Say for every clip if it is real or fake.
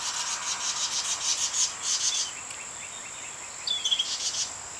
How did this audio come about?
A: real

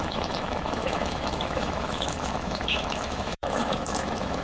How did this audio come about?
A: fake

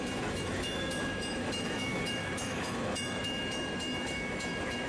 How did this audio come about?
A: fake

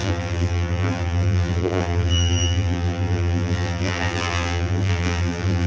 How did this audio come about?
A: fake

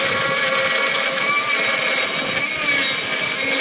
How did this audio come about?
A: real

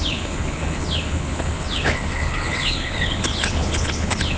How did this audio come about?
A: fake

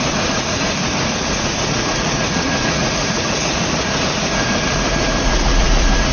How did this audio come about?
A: fake